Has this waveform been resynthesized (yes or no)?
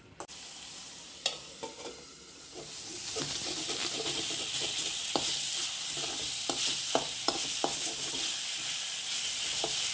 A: yes